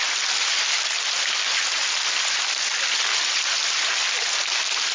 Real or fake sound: real